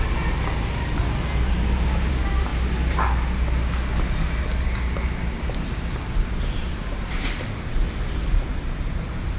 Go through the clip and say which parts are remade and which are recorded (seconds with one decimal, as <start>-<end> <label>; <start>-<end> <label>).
0.0-2.5 remade; 2.5-6.5 recorded; 6.5-9.4 remade